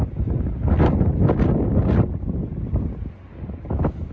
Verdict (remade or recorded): recorded